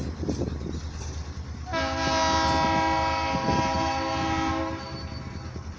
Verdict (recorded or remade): recorded